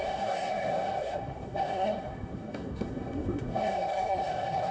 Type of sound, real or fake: fake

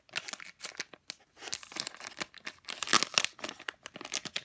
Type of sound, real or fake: real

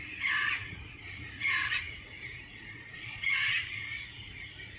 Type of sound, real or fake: fake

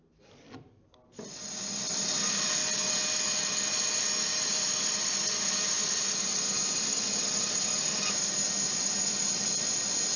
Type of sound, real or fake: real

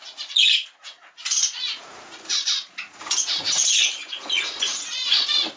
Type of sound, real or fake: fake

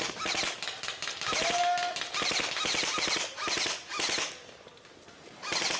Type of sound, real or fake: real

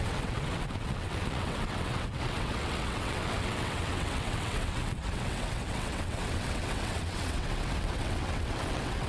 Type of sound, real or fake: fake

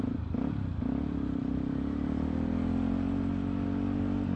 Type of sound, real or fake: real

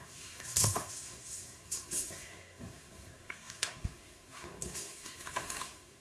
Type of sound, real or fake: fake